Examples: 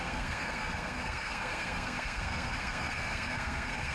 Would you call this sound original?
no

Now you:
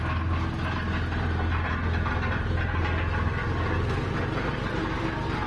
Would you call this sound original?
yes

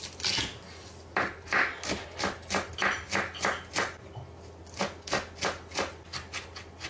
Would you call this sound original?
yes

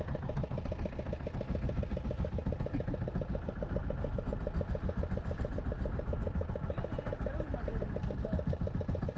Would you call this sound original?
yes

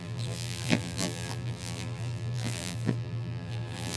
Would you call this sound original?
no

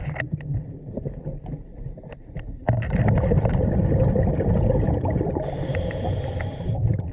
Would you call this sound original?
yes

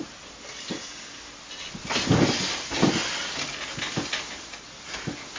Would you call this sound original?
yes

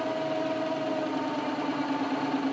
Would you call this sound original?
yes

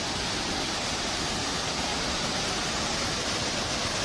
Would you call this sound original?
yes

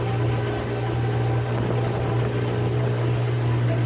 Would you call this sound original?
yes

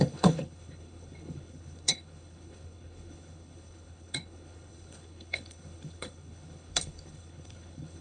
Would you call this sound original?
no